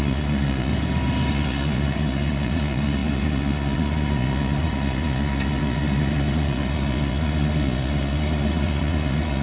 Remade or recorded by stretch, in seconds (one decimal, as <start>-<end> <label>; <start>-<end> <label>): 0.0-0.7 remade; 0.7-1.3 recorded; 1.3-9.4 remade